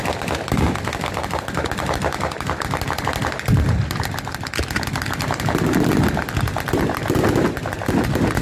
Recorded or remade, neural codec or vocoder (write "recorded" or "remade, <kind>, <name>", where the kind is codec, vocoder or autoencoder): recorded